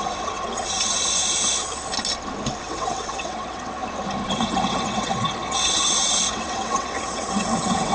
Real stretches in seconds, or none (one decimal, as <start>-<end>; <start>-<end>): 1.2-2.6; 3.8-4.3